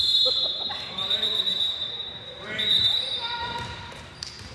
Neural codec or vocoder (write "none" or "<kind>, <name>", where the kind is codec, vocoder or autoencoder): vocoder, BigVGAN v2